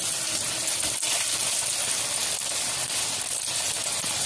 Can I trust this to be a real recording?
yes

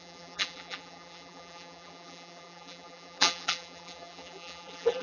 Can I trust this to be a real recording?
no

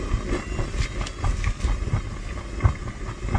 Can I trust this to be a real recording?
yes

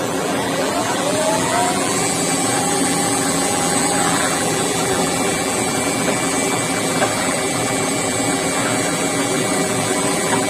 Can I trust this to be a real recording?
no